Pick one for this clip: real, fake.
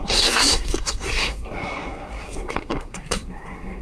fake